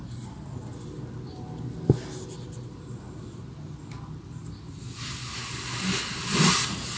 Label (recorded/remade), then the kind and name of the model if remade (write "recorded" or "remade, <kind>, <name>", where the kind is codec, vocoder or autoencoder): recorded